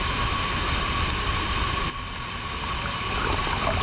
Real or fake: real